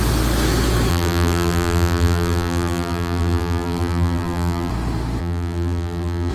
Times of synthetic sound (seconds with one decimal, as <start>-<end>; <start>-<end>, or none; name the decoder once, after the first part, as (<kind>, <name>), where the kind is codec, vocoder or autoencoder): 0.9-4.7 (vocoder, BigVGAN v2); 5.2-6.3